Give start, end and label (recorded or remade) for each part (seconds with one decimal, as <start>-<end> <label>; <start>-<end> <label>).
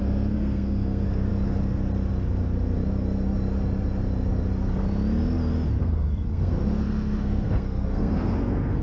0.0-1.3 remade; 1.3-5.8 recorded; 5.8-8.8 remade